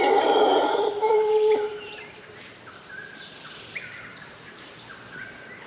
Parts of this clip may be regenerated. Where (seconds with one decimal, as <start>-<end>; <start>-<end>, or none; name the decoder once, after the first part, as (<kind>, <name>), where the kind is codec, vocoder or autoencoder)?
0.0-5.7 (vocoder, BigVGAN v2)